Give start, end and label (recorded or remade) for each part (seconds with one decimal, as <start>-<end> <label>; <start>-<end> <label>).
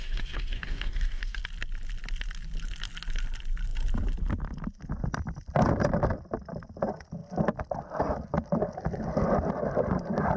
0.0-1.4 remade; 1.4-10.4 recorded